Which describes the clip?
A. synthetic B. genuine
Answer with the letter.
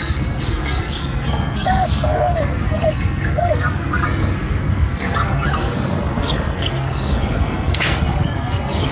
A